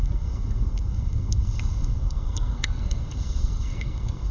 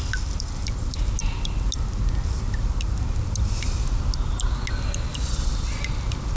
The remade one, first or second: first